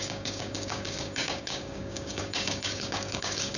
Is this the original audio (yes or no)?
no